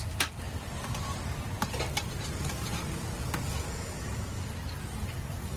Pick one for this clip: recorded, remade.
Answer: recorded